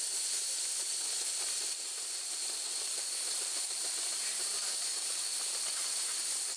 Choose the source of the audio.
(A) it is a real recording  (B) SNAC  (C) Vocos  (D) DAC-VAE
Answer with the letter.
A